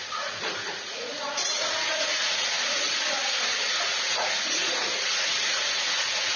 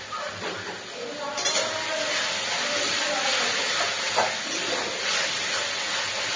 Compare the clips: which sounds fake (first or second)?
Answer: first